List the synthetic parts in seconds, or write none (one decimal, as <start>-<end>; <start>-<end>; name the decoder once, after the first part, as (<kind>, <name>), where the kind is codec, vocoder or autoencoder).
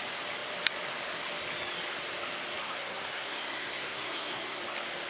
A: 2.6-4.6 (codec, SNAC)